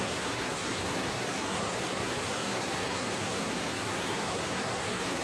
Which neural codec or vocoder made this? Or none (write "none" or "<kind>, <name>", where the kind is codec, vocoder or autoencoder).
codec, SNAC